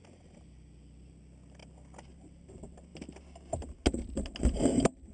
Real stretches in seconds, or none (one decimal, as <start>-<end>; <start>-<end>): 0.0-5.1

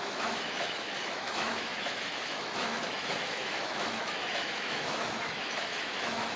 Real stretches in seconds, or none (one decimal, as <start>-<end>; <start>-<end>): none

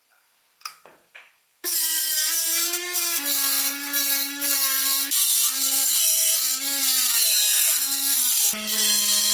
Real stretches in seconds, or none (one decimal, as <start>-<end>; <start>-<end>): none

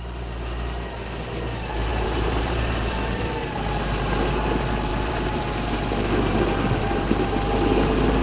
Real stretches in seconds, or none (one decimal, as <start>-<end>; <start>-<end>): 0.0-1.9; 3.3-4.9; 5.4-8.2

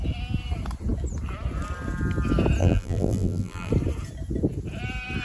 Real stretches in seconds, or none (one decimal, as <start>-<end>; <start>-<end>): 0.0-2.6; 3.7-5.2

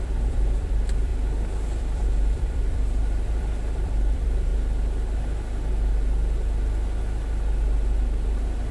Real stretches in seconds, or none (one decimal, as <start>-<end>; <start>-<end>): 1.1-1.8; 4.5-8.7

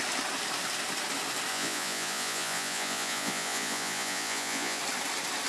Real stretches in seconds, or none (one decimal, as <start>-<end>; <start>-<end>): 0.0-1.5; 4.8-5.5